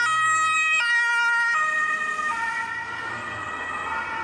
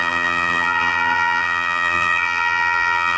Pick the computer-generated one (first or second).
second